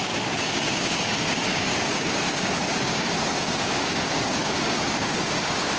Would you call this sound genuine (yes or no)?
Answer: no